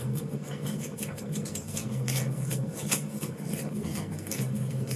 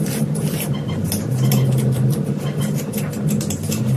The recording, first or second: second